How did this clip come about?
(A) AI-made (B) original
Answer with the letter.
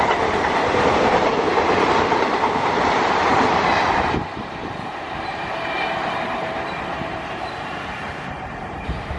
A